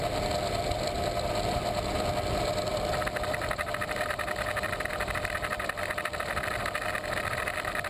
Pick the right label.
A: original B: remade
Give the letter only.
A